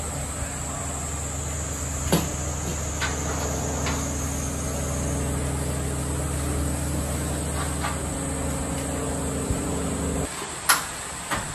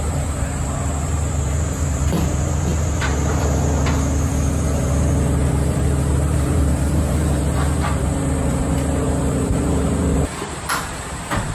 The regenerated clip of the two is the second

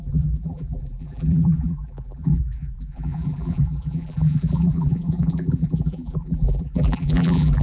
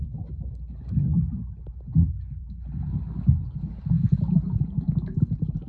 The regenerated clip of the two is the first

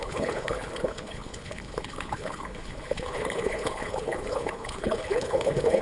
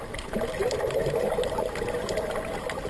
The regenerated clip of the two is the first